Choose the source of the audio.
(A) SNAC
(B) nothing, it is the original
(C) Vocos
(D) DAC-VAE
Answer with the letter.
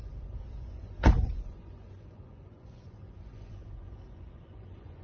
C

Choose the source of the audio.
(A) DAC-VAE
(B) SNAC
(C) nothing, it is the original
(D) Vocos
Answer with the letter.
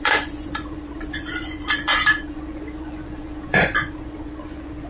D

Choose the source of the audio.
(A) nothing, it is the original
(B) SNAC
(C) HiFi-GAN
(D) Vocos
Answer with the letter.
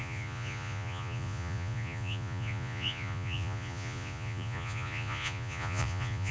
D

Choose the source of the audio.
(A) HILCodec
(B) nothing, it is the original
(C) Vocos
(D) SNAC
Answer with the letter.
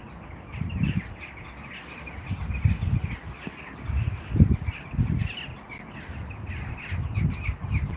B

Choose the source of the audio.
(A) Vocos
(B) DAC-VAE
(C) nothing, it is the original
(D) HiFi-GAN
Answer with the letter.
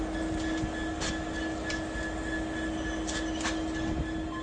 C